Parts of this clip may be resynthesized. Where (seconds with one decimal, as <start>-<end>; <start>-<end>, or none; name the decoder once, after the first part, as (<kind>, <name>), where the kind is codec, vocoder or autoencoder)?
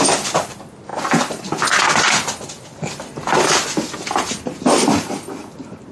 none